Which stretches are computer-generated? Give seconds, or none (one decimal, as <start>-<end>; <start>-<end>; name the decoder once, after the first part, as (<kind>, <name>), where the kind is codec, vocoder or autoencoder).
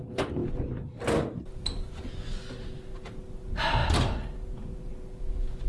none